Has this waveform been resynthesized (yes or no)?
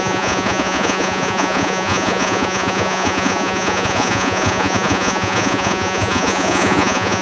yes